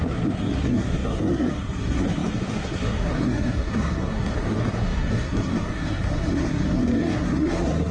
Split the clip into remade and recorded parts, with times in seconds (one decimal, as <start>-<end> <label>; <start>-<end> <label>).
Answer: 0.0-7.9 remade